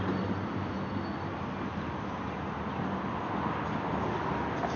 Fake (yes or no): no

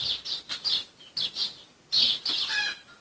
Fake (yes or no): no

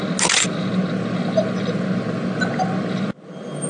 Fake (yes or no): no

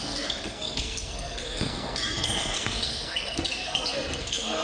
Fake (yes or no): yes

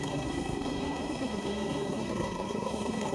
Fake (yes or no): yes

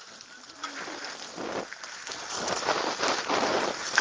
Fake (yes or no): no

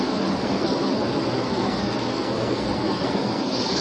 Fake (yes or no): yes